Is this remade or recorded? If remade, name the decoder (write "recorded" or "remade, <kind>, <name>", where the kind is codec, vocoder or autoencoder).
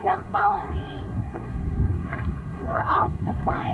remade, codec, SNAC